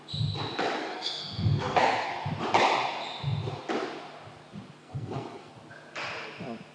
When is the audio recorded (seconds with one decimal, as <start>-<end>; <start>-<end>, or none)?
0.0-0.8; 2.1-4.8; 5.5-6.7